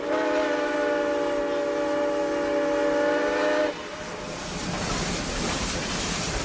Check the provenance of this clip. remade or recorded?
recorded